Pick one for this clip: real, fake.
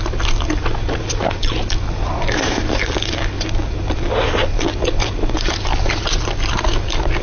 real